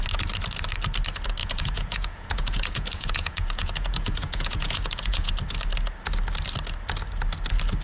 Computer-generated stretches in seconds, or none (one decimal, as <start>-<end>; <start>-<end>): 1.4-5.3